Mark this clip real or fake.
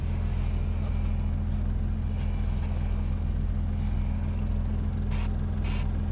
real